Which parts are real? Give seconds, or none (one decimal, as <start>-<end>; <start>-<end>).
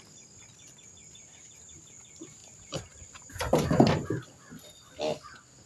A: 0.0-2.4; 3.9-5.7